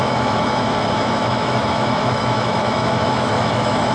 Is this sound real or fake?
fake